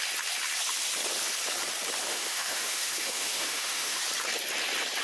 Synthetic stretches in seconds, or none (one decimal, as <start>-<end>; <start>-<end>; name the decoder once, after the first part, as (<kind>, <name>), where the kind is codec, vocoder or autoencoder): 2.1-4.0 (autoencoder, DAC-VAE)